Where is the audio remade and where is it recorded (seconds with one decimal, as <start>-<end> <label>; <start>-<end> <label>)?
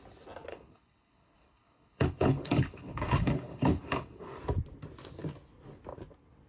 0.0-0.5 recorded; 0.5-4.4 remade; 4.4-6.5 recorded